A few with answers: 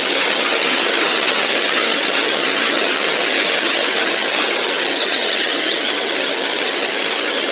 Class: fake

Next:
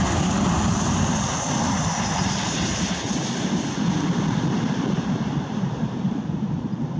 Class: real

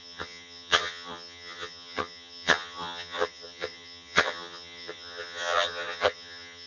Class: fake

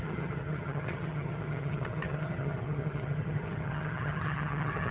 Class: fake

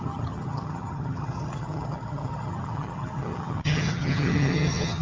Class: fake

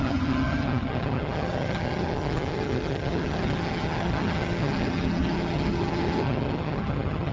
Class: fake